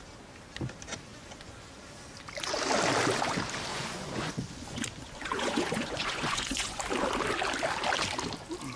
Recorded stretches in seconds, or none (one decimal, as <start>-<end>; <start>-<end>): 0.0-1.1; 1.8-3.7; 6.8-8.8